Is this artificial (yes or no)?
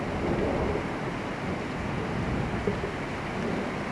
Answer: no